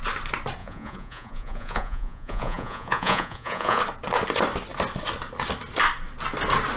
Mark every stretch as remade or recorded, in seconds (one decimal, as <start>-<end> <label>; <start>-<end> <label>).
0.0-0.6 recorded; 0.6-3.8 remade; 3.8-6.8 recorded